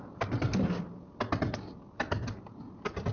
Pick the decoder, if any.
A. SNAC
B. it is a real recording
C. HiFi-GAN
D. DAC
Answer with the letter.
B